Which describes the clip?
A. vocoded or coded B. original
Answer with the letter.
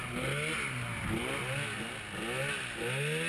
B